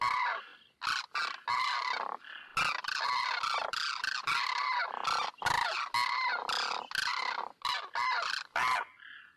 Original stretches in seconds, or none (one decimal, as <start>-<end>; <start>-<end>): 0.0-9.4